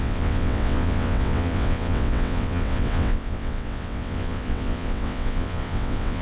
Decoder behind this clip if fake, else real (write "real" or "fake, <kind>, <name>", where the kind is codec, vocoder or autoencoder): fake, vocoder, WaveNeXt